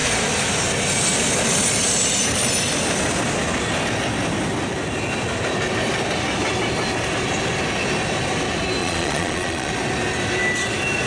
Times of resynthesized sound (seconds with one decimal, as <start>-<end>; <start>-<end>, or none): 8.8-9.7